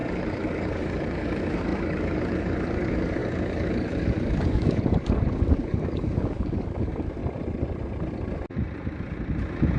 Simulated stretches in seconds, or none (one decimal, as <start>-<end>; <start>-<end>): 0.0-7.2